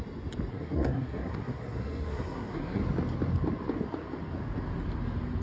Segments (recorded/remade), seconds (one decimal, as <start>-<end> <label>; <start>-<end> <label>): 0.0-0.5 recorded; 0.5-2.8 remade; 2.8-5.4 recorded